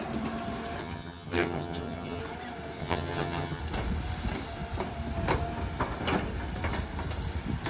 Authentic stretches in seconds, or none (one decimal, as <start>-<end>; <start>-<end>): 0.0-0.8; 2.2-2.8; 3.6-7.7